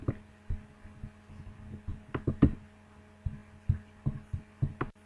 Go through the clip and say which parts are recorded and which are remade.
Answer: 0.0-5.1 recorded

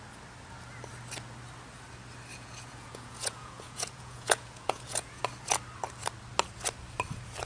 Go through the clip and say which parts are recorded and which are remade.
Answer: 0.0-2.3 recorded; 2.3-5.2 remade; 5.2-7.5 recorded

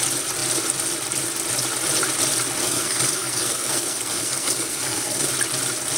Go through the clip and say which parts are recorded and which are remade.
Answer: 0.0-2.6 recorded; 2.6-5.3 remade; 5.3-6.0 recorded

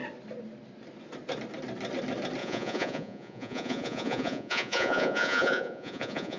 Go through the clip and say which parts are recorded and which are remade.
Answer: 0.0-2.4 recorded; 2.4-6.4 remade

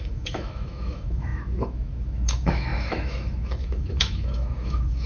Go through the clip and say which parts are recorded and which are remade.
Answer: 0.0-5.1 remade

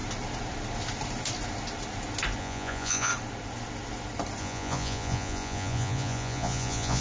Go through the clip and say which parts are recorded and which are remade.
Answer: 0.0-2.4 recorded; 2.4-3.1 remade; 3.1-4.4 recorded; 4.4-7.0 remade